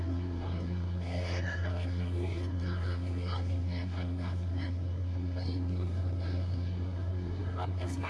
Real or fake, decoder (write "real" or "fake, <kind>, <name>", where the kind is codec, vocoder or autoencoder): fake, codec, SNAC